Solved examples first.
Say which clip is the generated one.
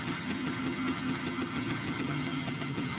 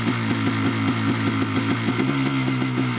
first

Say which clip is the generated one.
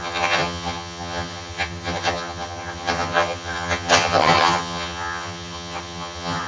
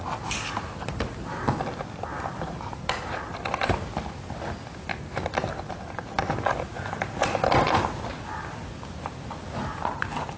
first